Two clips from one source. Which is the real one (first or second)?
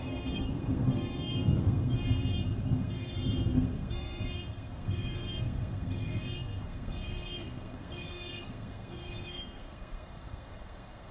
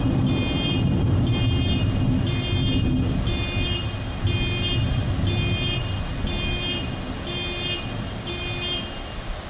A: second